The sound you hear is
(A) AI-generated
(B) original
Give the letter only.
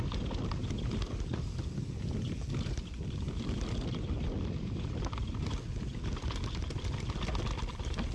B